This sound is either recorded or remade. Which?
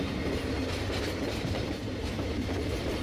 remade